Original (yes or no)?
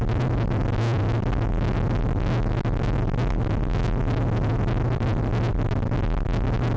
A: yes